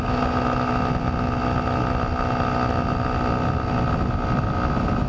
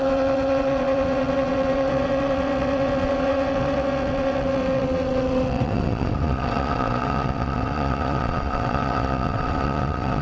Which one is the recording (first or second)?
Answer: first